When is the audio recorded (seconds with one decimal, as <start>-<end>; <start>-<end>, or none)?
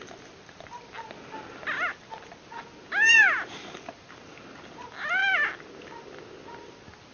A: 0.0-7.1